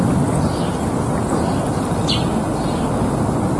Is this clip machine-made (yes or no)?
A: no